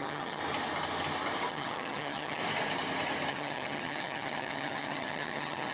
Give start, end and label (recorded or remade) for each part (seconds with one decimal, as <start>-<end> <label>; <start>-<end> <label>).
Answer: 0.0-0.4 remade; 0.4-1.5 recorded; 1.5-2.4 remade; 2.4-3.3 recorded; 3.3-5.7 remade